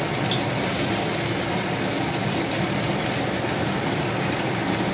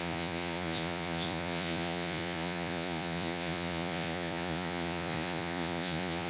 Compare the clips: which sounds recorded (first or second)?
first